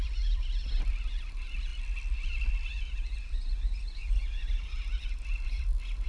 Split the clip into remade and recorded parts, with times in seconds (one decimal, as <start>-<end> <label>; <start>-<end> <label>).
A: 0.0-6.1 recorded